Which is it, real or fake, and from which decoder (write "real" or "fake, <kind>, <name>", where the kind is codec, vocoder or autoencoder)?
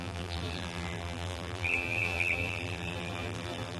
fake, vocoder, BigVGAN v2